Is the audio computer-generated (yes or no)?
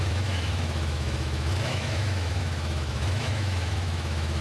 yes